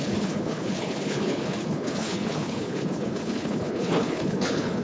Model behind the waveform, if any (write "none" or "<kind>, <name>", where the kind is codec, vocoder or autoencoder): codec, HILCodec